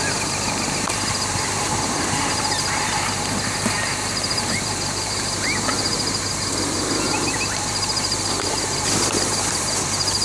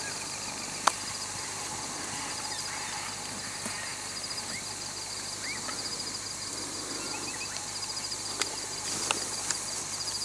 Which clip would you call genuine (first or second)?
second